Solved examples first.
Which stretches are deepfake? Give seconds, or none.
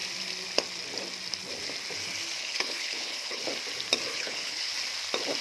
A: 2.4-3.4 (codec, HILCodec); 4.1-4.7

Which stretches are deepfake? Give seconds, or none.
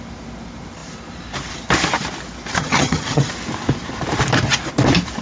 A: 2.6-3.3 (vocoder, HiFi-GAN)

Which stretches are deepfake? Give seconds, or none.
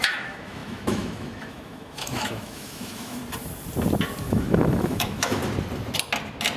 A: 0.0-3.2 (autoencoder, DAC-VAE); 4.2-5.4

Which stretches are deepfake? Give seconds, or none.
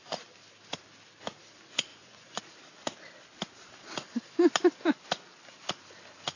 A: 1.9-2.4 (vocoder, Vocos)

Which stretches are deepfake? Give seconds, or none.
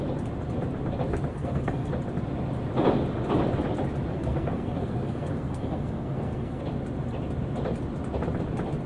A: 1.3-1.9 (codec, SNAC); 4.1-6.6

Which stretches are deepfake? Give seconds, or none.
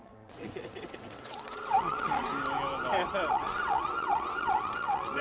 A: 0.0-2.3 (vocoder, WaveNeXt); 3.3-5.2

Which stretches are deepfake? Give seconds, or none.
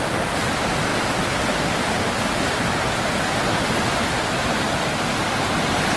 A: none